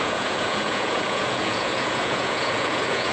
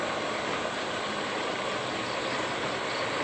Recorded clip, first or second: second